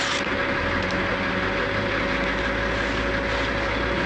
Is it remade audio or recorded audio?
recorded